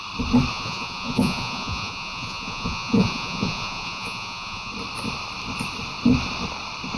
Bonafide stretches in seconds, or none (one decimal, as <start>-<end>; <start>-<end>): 0.0-0.5; 4.7-7.0